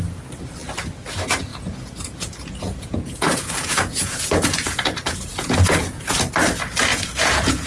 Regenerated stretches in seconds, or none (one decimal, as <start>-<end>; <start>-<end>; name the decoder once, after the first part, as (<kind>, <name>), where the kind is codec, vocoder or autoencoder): 1.5-6.1 (vocoder, Vocos); 6.9-7.7